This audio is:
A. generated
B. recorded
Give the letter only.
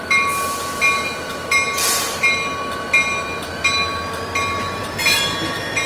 B